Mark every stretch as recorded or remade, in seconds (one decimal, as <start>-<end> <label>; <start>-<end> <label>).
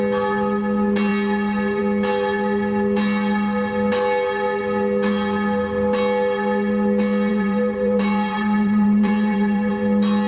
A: 0.0-7.3 recorded; 7.3-9.7 remade; 9.7-10.3 recorded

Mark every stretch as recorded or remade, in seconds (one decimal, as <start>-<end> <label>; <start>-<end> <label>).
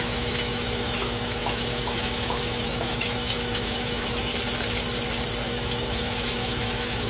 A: 0.0-4.3 remade; 4.3-5.5 recorded; 5.5-7.1 remade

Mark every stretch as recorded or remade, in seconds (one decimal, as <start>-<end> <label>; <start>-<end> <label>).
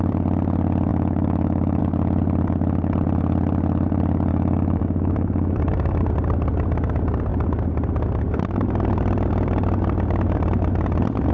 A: 0.0-0.9 recorded; 0.9-1.8 remade; 1.8-4.3 recorded; 4.3-6.0 remade; 6.0-11.3 recorded